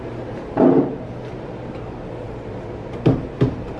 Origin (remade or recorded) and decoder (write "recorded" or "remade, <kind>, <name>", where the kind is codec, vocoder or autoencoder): remade, vocoder, BigVGAN v2